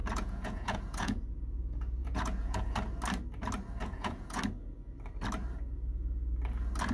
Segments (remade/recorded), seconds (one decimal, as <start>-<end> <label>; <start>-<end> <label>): 0.0-1.3 remade; 1.3-2.0 recorded; 2.0-2.7 remade; 2.7-3.8 recorded; 3.8-4.4 remade; 4.4-6.9 recorded